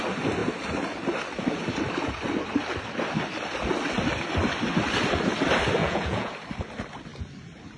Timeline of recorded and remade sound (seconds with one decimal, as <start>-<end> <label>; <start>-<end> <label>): 0.0-5.8 recorded; 5.8-6.3 remade; 6.3-7.8 recorded